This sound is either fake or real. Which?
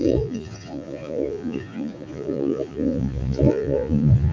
fake